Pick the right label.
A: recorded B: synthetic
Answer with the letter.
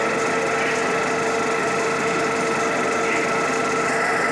A